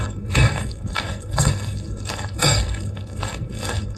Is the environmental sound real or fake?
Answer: fake